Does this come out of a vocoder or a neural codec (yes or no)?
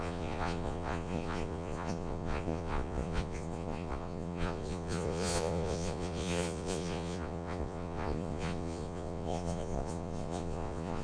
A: yes